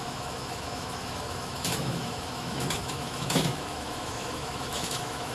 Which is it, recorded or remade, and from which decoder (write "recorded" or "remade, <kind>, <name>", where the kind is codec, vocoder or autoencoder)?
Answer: remade, autoencoder, DAC-VAE